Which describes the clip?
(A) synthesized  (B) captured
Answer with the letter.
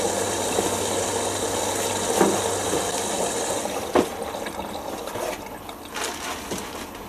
B